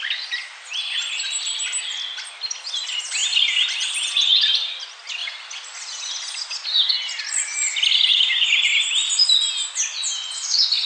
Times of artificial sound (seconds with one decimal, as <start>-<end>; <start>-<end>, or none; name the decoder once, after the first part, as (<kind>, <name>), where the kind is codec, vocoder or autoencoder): none